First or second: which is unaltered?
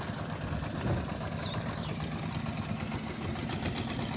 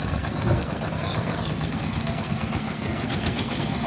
first